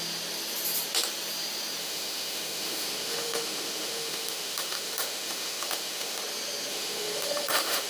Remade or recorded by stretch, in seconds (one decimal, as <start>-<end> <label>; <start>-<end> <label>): 0.0-1.8 recorded; 1.8-6.2 remade; 6.2-6.7 recorded; 6.7-7.9 remade